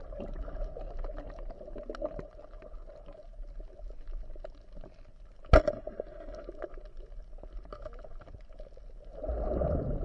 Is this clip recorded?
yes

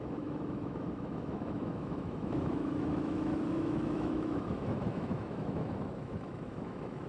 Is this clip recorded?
no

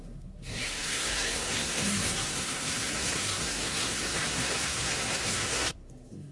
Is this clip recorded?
no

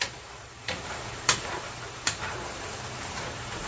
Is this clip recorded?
no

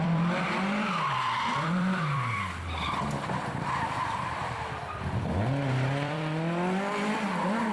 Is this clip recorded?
no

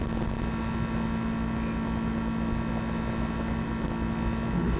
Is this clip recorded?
yes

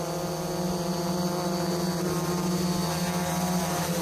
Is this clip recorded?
yes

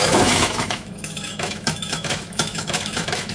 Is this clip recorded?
no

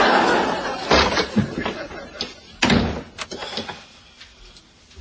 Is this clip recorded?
yes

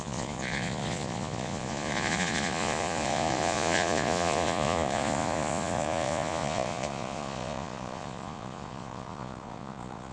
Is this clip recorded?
no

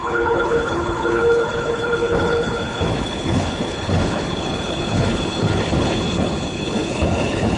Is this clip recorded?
no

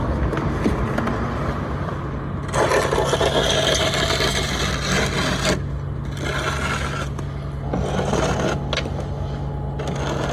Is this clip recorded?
yes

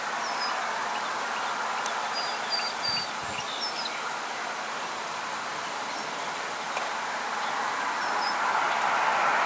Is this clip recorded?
yes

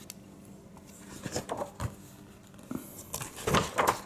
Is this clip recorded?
yes